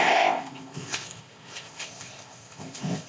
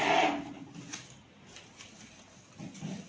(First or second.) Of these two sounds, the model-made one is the first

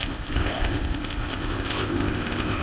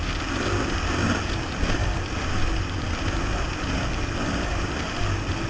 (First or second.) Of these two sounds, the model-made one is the first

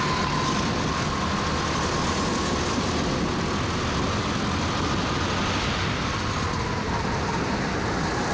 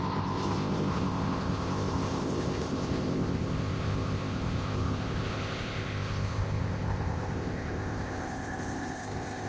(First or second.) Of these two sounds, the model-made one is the second